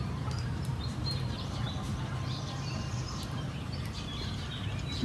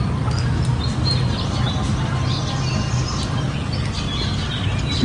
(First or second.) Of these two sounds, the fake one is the first